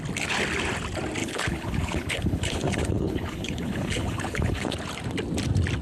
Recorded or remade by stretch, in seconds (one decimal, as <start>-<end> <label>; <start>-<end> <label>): 0.0-1.2 recorded; 1.2-4.7 remade; 4.7-5.8 recorded